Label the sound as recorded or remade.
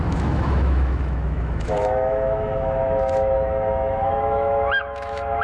remade